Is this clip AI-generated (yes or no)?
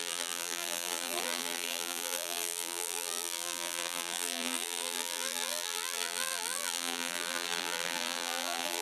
yes